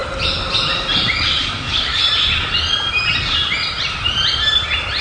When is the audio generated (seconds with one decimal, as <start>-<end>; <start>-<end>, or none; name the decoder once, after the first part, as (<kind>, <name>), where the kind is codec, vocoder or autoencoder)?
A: 1.4-1.9 (codec, DAC)